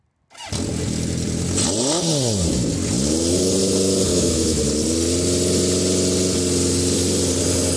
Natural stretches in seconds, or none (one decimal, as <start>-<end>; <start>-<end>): 0.0-4.1; 4.6-7.8